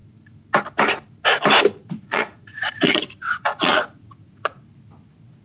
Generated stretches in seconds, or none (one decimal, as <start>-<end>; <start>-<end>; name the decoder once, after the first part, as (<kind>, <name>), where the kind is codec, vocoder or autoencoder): 1.8-4.6 (vocoder, Vocos)